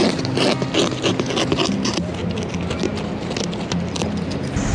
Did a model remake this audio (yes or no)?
no